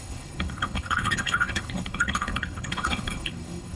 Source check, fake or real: fake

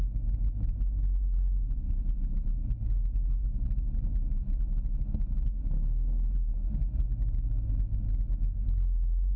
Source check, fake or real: real